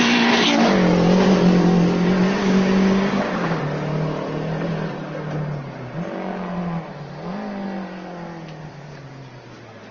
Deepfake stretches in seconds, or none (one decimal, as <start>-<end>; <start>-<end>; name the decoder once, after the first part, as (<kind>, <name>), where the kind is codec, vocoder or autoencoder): 2.4-3.6 (codec, DAC)